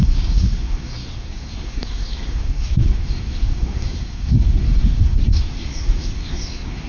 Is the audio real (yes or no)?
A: no